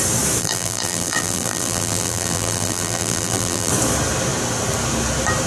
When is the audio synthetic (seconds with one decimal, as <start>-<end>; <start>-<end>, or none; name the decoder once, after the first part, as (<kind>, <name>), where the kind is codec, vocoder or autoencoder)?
0.4-3.7 (vocoder, BigVGAN v2)